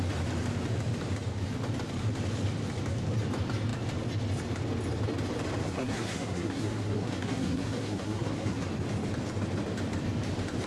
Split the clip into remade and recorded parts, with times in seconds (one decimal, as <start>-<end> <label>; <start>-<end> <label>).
0.0-5.6 recorded; 5.6-8.7 remade; 8.7-10.7 recorded